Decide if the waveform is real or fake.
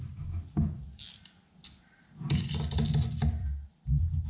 real